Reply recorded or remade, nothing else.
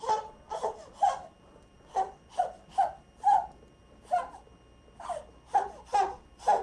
recorded